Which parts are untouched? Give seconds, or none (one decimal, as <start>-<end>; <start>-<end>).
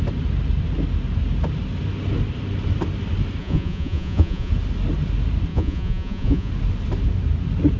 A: 0.0-3.4; 4.5-5.5; 6.5-7.8